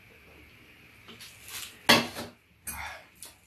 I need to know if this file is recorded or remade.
recorded